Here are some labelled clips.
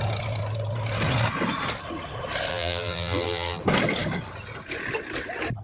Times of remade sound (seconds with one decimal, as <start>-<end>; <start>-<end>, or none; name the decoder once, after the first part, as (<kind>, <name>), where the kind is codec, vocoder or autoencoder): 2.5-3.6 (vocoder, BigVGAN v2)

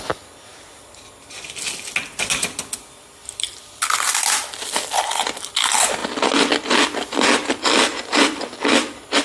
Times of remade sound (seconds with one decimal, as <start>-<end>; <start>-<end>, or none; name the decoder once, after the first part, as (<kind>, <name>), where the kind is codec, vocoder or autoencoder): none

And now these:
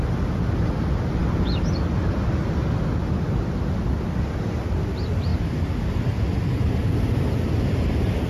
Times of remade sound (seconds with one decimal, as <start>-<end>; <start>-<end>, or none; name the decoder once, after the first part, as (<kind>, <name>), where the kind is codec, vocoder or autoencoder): 0.0-1.2 (vocoder, BigVGAN v2); 3.9-5.3; 6.2-8.3